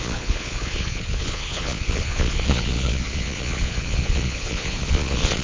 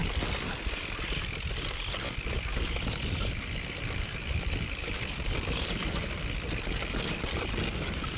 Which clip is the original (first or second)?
second